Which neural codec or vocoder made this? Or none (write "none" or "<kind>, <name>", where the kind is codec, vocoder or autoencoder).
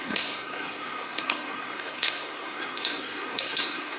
codec, SNAC